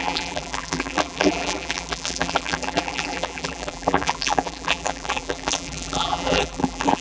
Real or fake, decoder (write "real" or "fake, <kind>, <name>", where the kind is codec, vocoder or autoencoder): fake, vocoder, BigVGAN v2